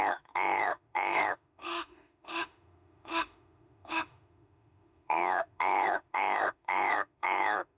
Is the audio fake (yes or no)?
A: yes